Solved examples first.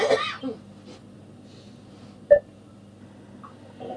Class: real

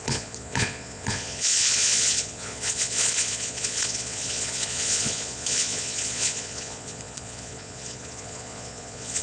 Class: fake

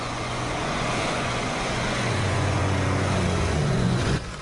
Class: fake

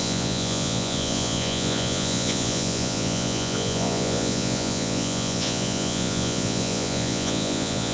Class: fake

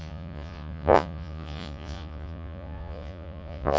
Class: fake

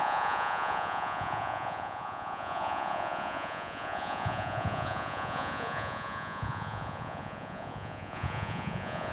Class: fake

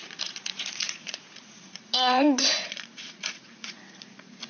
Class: fake